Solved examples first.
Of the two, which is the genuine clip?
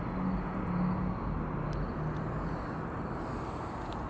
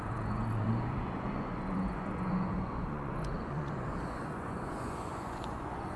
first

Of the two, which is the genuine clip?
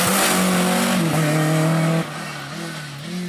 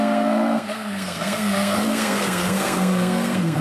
first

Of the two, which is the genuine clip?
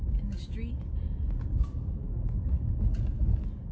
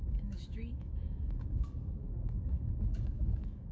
first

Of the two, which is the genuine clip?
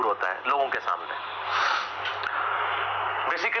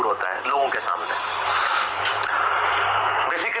first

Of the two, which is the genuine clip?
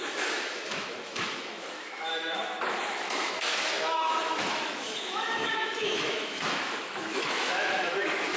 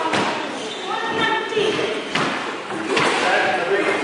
second